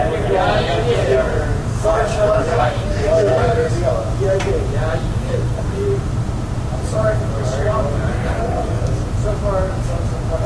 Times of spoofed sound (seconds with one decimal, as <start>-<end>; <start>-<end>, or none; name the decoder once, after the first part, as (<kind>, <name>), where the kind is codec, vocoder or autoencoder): 1.7-3.7 (codec, SNAC); 5.1-5.9; 8.1-8.8